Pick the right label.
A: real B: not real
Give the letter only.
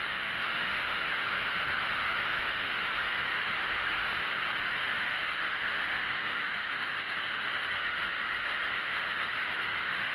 B